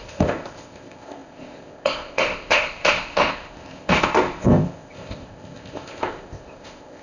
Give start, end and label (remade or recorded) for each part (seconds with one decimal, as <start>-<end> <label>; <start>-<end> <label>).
0.0-7.0 remade